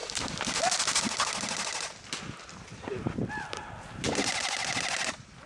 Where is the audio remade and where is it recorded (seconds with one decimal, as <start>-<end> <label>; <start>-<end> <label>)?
0.0-5.5 recorded